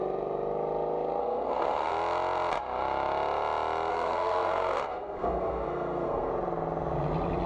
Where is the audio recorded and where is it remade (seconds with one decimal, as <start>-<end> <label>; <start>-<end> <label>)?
0.0-1.2 recorded; 1.2-1.9 remade; 1.9-3.9 recorded; 3.9-6.3 remade; 6.3-7.5 recorded